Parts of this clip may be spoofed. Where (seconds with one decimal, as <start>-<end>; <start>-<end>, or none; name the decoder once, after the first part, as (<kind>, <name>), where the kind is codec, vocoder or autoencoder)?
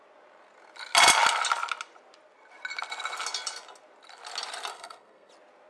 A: 4.7-5.3 (codec, SNAC)